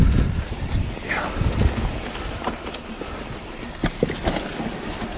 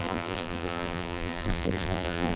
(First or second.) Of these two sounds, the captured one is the first